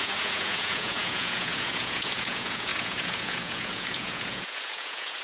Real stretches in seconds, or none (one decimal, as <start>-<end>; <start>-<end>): none